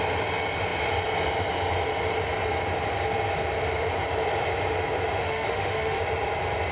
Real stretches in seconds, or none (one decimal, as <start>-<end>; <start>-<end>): 0.0-5.2; 6.0-6.7